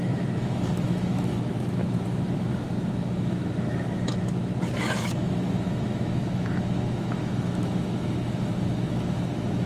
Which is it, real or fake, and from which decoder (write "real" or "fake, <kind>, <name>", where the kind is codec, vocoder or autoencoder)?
fake, autoencoder, DAC-VAE